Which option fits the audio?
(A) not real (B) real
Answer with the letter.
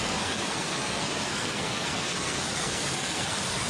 A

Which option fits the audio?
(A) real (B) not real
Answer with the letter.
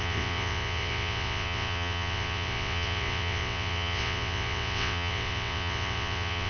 B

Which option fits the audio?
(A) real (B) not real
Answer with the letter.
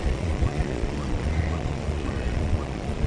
B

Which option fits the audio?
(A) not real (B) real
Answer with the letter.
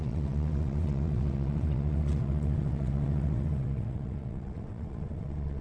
A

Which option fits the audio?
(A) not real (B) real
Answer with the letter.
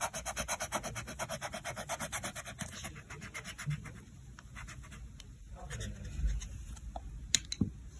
B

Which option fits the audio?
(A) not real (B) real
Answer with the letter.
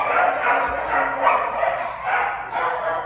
B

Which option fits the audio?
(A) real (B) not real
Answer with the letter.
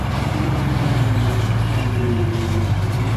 B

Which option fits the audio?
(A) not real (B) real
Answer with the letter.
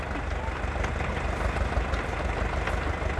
B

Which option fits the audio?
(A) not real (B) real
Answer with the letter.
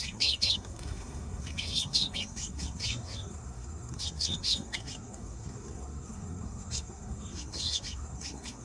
A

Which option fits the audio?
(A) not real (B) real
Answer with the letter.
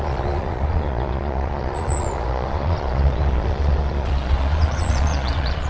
A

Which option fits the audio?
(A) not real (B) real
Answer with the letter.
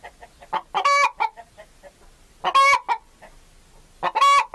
B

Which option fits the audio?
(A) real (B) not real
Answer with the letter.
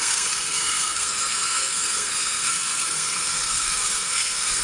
B